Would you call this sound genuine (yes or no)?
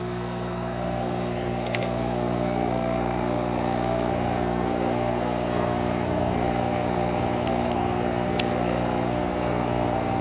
no